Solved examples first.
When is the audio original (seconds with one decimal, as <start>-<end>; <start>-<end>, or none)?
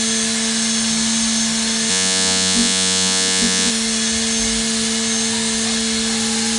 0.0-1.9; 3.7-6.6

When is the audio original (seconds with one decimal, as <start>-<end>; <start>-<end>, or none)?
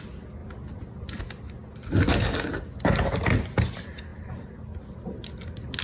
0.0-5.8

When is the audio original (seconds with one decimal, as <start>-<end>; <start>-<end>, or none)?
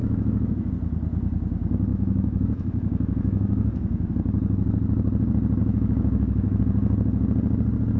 0.7-1.9; 4.1-5.6; 6.6-8.0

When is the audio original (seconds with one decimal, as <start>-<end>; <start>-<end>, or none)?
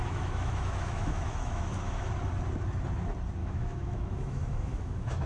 2.1-3.4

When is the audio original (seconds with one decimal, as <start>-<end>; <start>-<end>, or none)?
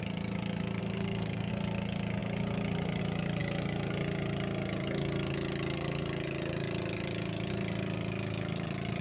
0.0-0.8; 1.5-9.0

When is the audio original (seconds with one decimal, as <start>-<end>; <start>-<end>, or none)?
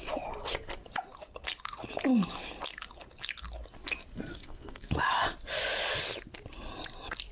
0.0-4.3; 4.9-7.3